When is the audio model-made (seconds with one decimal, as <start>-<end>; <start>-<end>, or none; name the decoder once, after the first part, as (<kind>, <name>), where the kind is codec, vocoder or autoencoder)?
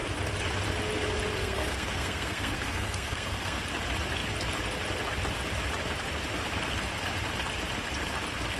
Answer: 1.4-3.6 (codec, SNAC)